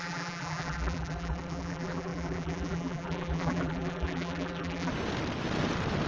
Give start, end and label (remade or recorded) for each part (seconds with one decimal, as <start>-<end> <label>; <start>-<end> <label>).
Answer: 0.0-4.9 remade; 4.9-6.1 recorded

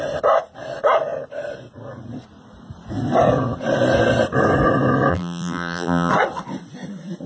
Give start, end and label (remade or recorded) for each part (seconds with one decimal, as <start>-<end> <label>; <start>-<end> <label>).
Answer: 0.0-5.1 recorded; 5.1-6.1 remade; 6.1-7.3 recorded

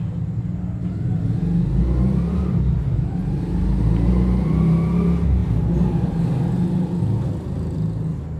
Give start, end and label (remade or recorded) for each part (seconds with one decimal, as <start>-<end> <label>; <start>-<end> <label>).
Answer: 0.0-8.4 recorded

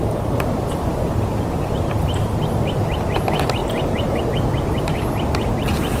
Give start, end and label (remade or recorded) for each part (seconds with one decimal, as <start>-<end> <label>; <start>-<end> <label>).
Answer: 0.0-3.6 recorded; 3.6-4.2 remade; 4.2-6.0 recorded

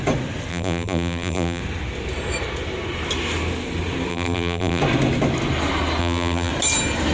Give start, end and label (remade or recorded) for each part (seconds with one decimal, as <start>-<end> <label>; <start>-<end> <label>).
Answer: 0.0-0.5 recorded; 0.5-1.6 remade; 1.6-4.1 recorded; 4.1-4.8 remade; 4.8-6.0 recorded; 6.0-6.5 remade; 6.5-7.1 recorded

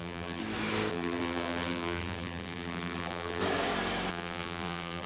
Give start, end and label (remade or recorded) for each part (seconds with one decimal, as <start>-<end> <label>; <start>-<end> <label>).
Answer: 0.0-0.4 remade; 0.4-0.9 recorded; 0.9-3.4 remade; 3.4-4.1 recorded; 4.1-5.1 remade

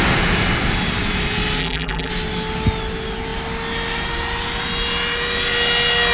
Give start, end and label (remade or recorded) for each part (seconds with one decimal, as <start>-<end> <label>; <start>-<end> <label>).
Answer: 0.0-1.6 recorded; 1.6-2.1 remade; 2.1-6.1 recorded

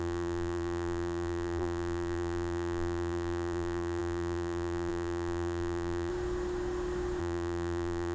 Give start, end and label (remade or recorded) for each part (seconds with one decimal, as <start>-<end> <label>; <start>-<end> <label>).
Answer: 0.0-6.1 remade; 6.1-7.2 recorded; 7.2-8.1 remade